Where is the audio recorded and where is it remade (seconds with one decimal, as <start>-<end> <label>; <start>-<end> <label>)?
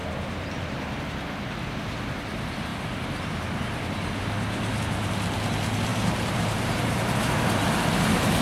0.0-1.0 remade; 1.0-5.9 recorded; 5.9-6.8 remade; 6.8-8.4 recorded